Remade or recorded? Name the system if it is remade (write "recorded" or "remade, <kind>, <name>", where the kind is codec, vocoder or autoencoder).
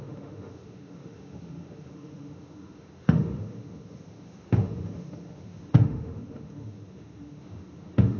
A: remade, autoencoder, DAC-VAE